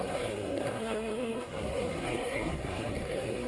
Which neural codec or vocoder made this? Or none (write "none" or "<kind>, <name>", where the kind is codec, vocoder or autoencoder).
codec, SNAC